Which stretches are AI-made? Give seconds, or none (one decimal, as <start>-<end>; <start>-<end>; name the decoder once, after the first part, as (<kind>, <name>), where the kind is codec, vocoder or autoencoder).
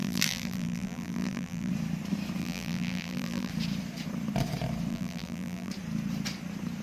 0.0-1.7 (vocoder, BigVGAN v2); 2.4-3.5; 4.9-5.7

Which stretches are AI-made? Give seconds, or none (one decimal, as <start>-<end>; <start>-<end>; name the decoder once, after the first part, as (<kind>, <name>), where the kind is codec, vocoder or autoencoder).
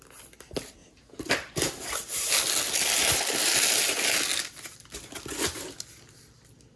0.8-1.9 (vocoder, BigVGAN v2)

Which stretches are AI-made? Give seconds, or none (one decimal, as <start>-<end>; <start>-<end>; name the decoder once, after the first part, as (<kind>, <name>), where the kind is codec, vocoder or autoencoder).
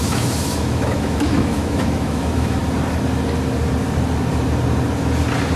0.0-2.6 (autoencoder, DAC-VAE)